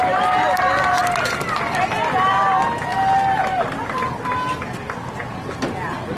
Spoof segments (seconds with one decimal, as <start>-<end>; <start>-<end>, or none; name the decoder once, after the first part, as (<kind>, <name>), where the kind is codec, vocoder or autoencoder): none